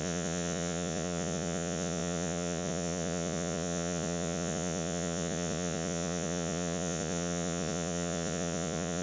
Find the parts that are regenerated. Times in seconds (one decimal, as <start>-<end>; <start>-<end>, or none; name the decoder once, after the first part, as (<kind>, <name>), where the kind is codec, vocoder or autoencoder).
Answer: 0.0-9.0 (vocoder, Vocos)